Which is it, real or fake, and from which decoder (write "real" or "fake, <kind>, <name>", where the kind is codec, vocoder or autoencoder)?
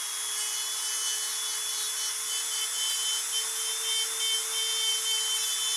real